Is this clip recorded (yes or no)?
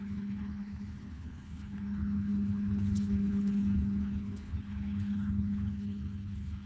no